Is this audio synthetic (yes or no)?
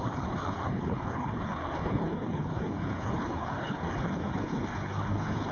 yes